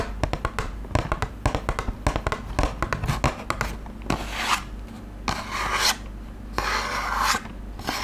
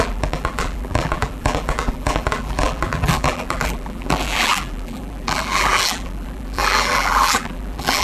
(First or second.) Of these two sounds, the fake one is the second